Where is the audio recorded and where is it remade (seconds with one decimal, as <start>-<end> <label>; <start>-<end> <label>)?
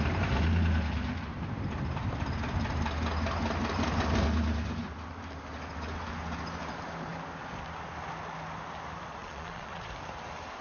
0.0-9.2 recorded; 9.2-9.9 remade; 9.9-10.6 recorded